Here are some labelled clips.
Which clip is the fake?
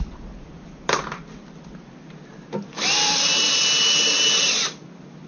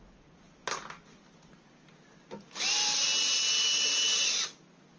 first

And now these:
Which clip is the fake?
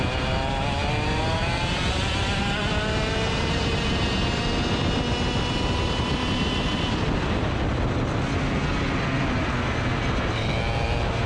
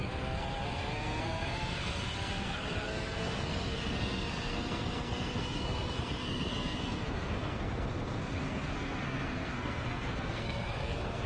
second